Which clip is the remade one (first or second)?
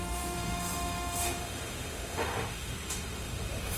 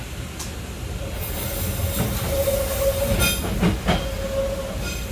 first